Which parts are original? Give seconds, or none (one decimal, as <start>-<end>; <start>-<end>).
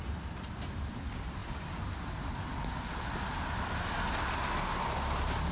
0.0-5.5